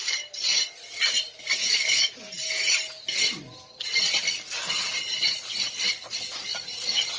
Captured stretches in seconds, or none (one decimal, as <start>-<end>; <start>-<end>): 0.0-1.6; 2.1-7.2